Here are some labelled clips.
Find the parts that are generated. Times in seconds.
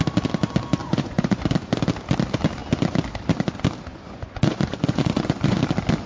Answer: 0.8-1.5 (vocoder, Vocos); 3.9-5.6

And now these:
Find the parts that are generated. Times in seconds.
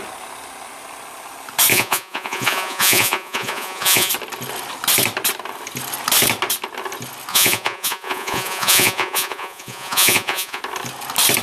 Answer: 1.7-4.1 (vocoder, Vocos); 7.3-10.6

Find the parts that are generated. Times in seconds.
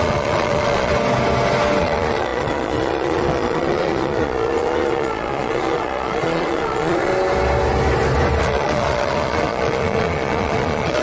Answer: 0.0-0.9 (vocoder, Vocos); 1.8-7.1; 8.4-11.0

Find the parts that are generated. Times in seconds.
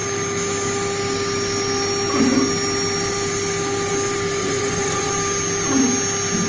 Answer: 4.4-5.1 (vocoder, Vocos)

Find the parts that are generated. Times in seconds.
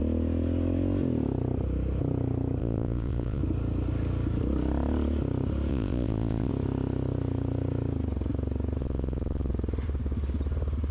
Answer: 2.6-3.4 (vocoder, Vocos); 5.7-6.5; 8.8-9.5